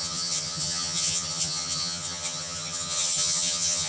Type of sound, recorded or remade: remade